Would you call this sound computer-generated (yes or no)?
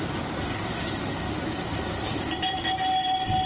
no